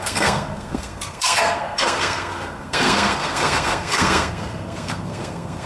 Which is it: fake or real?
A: fake